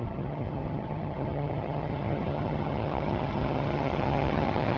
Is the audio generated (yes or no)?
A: yes